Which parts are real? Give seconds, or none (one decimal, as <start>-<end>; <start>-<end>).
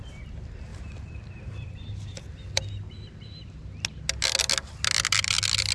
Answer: 0.0-0.7; 2.2-5.7